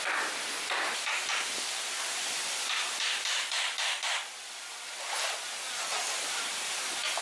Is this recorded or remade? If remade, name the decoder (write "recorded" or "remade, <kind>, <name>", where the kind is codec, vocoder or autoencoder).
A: remade, vocoder, BigVGAN v2